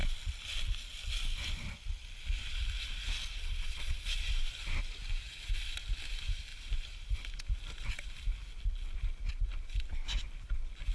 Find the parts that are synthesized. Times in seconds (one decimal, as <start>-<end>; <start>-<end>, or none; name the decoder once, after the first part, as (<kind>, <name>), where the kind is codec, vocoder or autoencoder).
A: 3.2-4.2 (vocoder, Vocos)

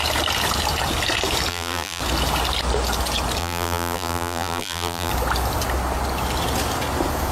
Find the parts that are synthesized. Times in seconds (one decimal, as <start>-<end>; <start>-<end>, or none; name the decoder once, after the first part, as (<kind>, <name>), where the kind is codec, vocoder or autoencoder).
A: 1.5-2.0 (vocoder, BigVGAN v2); 3.4-5.1

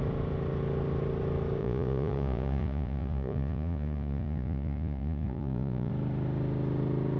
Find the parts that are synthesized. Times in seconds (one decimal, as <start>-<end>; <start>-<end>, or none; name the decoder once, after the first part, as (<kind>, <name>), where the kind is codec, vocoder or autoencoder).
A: 1.6-5.9 (vocoder, Vocos)

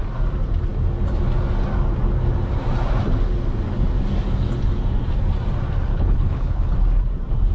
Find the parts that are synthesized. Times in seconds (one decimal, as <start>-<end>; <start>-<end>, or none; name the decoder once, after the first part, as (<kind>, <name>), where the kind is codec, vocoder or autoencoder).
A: 5.9-6.6 (codec, HILCodec)

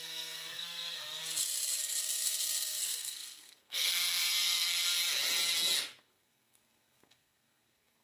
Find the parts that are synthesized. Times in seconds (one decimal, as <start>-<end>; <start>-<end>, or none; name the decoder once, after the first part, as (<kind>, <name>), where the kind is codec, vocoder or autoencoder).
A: 0.0-1.2 (codec, SNAC); 1.8-4.9; 6.0-8.0